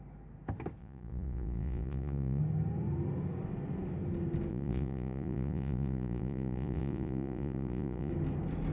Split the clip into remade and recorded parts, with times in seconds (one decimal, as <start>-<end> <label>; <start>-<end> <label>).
0.0-0.8 recorded; 0.8-2.4 remade; 2.4-4.5 recorded; 4.5-8.1 remade; 8.1-8.7 recorded